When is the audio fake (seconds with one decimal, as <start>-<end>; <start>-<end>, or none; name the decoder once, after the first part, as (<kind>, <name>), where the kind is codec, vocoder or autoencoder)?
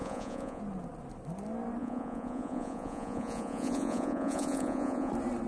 0.0-0.6 (vocoder, Vocos); 1.8-5.1